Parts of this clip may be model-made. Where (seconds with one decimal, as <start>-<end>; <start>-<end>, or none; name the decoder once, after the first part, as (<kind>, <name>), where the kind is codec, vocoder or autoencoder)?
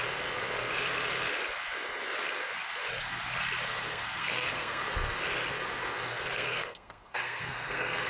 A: 3.9-4.8 (codec, SNAC); 6.1-8.1